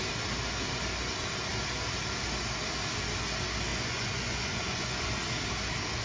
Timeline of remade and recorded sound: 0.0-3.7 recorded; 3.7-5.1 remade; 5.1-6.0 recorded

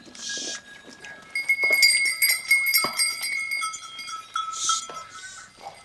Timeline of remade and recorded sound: 0.0-5.8 recorded